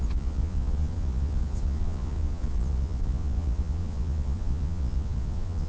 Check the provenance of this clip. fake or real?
fake